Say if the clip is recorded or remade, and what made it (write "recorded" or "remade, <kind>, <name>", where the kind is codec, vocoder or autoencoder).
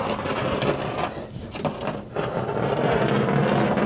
recorded